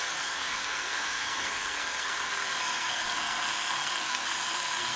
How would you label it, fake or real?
fake